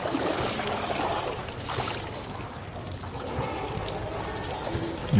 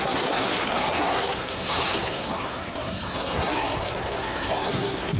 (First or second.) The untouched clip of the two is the first